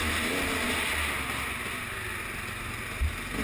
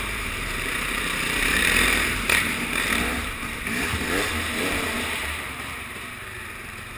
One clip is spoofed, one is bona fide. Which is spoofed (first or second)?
second